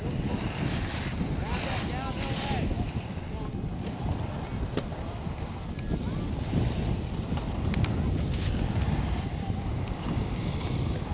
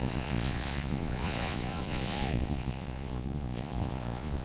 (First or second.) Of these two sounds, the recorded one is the first